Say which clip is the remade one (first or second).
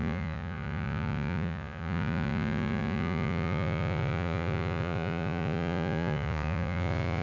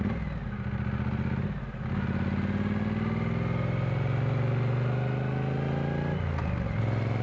first